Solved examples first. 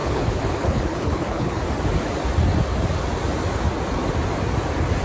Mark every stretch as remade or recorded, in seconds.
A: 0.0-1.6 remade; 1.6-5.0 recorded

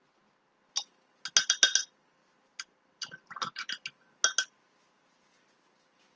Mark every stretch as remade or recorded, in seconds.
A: 0.0-6.2 recorded

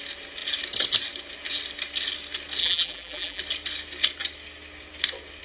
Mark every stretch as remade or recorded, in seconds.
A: 0.0-2.6 recorded; 2.6-3.4 remade; 3.4-5.4 recorded

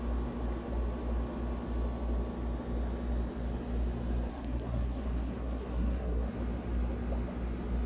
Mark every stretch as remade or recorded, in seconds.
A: 0.0-4.3 recorded; 4.3-6.3 remade; 6.3-7.9 recorded

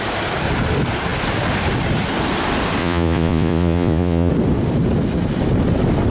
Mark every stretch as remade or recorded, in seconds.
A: 0.0-2.8 recorded; 2.8-4.3 remade; 4.3-6.1 recorded

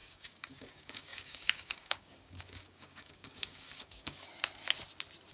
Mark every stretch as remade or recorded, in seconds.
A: 0.0-4.3 remade; 4.3-5.3 recorded

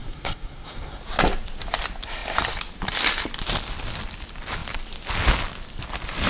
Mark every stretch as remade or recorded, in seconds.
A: 0.0-1.0 remade; 1.0-6.3 recorded